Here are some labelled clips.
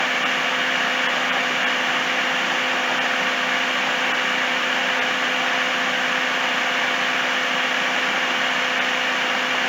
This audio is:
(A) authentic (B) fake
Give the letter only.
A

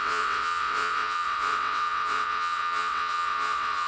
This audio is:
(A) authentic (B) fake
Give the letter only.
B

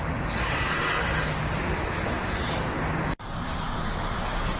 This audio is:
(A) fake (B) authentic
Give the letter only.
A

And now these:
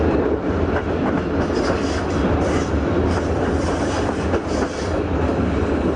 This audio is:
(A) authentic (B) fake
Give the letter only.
A